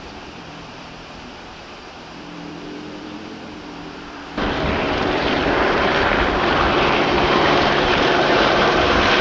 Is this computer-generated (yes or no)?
yes